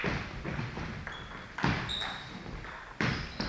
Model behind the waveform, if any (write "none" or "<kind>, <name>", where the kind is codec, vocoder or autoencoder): none